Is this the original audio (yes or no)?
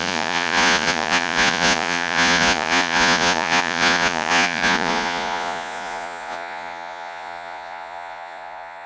no